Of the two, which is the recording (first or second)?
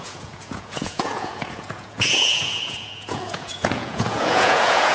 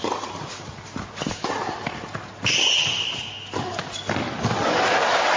second